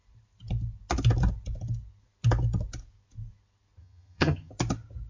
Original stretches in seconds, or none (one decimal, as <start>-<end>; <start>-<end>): 0.0-3.8; 4.5-5.1